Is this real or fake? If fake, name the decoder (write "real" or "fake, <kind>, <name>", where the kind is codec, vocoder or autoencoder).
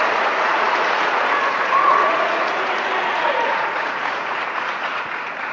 fake, vocoder, Vocos